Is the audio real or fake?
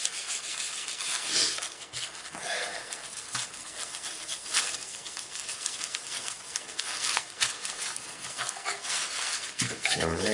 fake